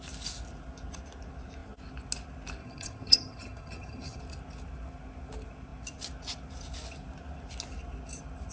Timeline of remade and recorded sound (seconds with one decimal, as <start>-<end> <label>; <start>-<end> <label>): 0.0-2.6 recorded; 2.6-4.2 remade; 4.2-8.5 recorded